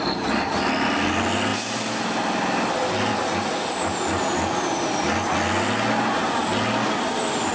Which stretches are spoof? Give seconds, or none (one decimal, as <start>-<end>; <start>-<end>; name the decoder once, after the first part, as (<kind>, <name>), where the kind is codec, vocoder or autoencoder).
none